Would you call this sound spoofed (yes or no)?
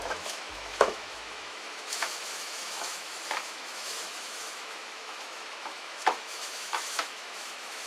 yes